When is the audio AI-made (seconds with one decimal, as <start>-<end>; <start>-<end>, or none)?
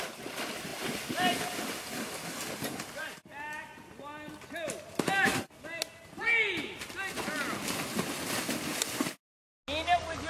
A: none